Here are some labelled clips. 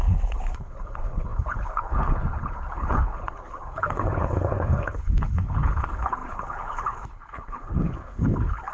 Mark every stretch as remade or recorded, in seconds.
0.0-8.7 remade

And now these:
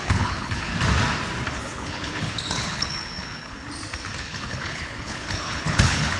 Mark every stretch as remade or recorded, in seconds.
0.0-0.7 remade; 0.7-1.5 recorded; 1.5-3.6 remade; 3.6-4.2 recorded; 4.2-6.2 remade

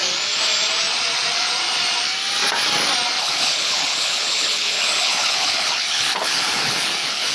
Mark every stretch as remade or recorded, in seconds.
0.0-3.2 recorded; 3.2-7.3 remade

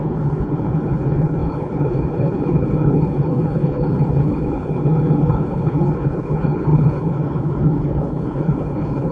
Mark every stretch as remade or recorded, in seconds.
0.0-9.1 remade

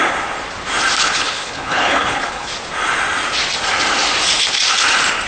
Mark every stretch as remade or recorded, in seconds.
0.0-1.0 recorded; 1.0-2.5 remade; 2.5-5.3 recorded

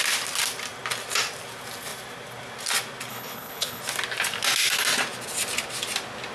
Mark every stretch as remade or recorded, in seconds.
0.0-3.1 recorded; 3.1-3.8 remade; 3.8-6.3 recorded